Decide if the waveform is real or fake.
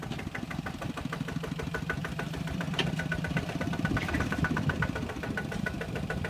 fake